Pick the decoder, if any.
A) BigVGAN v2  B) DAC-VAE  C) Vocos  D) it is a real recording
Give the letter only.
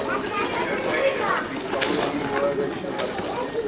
D